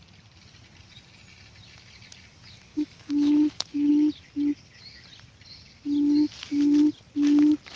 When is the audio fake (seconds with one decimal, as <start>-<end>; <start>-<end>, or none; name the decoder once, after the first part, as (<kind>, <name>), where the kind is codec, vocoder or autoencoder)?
2.7-3.9 (autoencoder, DAC-VAE)